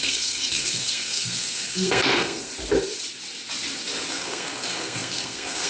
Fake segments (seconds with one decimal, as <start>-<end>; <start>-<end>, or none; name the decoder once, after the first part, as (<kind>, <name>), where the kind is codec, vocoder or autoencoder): 0.0-2.5 (codec, SNAC); 4.1-5.7